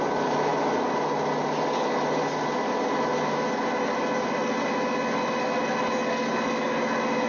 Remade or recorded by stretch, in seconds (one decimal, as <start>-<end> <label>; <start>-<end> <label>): 0.0-7.3 recorded